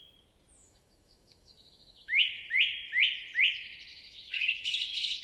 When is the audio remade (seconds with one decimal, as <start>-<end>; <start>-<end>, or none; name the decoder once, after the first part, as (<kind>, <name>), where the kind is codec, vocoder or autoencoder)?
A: 0.6-2.3 (autoencoder, DAC-VAE); 3.9-5.2